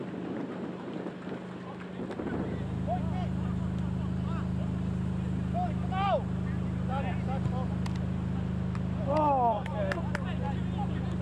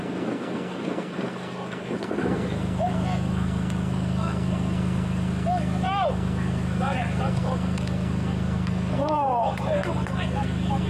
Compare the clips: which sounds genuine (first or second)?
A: first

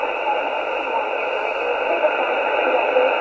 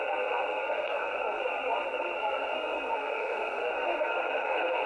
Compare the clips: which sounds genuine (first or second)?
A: first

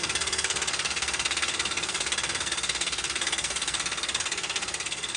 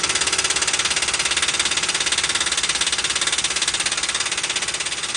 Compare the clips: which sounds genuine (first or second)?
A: second